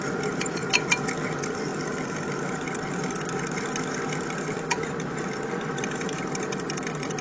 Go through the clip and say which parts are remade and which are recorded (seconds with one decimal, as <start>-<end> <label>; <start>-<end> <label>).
0.0-7.2 recorded